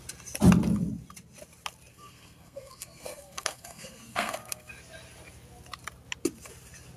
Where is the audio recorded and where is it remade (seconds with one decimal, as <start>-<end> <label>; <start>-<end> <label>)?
0.0-1.9 recorded; 1.9-4.7 remade; 4.7-7.0 recorded